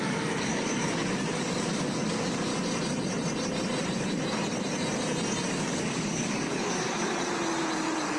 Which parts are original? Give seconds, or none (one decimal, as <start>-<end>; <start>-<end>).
2.5-5.5; 7.0-8.2